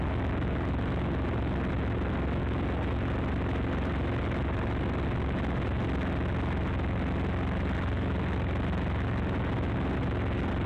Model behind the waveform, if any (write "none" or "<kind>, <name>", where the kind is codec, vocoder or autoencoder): none